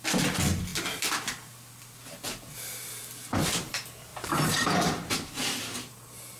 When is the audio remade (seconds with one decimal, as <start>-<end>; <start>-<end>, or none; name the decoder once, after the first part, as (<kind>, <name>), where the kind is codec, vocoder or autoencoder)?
4.1-5.9 (vocoder, BigVGAN v2)